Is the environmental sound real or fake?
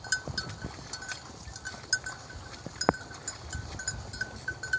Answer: real